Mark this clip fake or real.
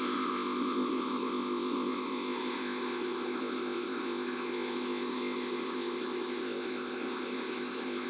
fake